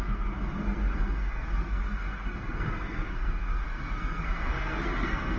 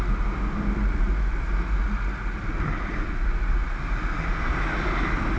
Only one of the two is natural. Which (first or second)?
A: second